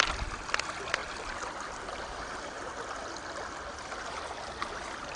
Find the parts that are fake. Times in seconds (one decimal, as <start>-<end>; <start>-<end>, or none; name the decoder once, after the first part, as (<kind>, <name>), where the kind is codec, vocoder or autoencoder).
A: none